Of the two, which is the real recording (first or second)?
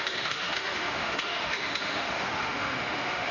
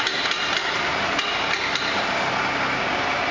second